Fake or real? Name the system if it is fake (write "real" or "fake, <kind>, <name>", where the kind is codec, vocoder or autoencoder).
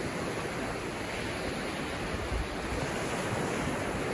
real